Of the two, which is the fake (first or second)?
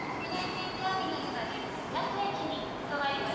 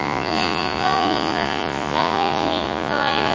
second